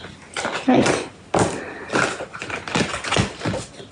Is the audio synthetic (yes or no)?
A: no